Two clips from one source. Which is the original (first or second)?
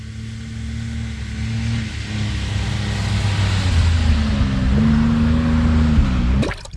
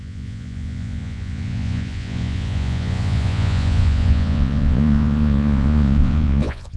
first